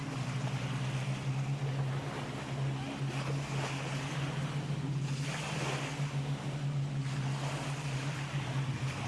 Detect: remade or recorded recorded